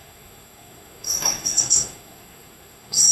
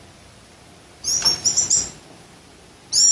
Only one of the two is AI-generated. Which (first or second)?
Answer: first